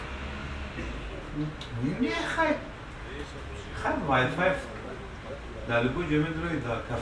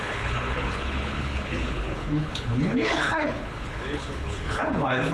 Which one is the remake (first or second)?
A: second